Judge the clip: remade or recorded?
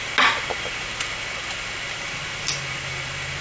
recorded